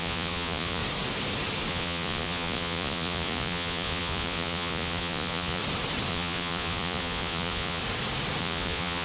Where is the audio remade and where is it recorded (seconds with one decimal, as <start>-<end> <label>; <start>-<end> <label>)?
0.0-0.8 remade; 0.8-1.7 recorded; 1.7-5.6 remade; 5.6-6.1 recorded; 6.1-7.8 remade; 7.8-8.4 recorded; 8.4-9.0 remade